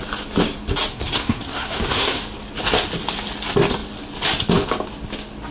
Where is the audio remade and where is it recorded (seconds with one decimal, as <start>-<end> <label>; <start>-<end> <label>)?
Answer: 0.0-0.9 recorded; 0.9-2.2 remade; 2.2-5.5 recorded